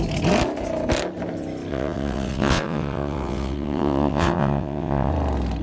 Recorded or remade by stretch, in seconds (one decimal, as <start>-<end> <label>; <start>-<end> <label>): 0.0-1.7 recorded; 1.7-5.1 remade; 5.1-5.6 recorded